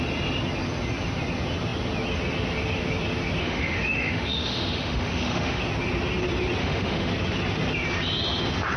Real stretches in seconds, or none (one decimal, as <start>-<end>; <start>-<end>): 0.0-3.4; 5.6-6.6; 7.1-8.8